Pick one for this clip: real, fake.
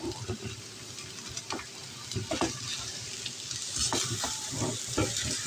real